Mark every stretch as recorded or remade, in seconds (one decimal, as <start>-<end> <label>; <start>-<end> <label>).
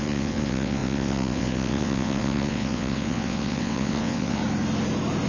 0.0-4.4 remade; 4.4-5.3 recorded